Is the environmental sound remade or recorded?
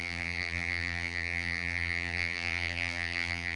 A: remade